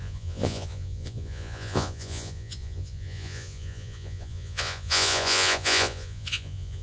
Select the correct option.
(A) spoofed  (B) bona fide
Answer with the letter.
A